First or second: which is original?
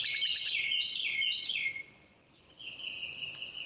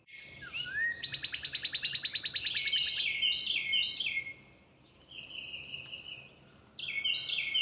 second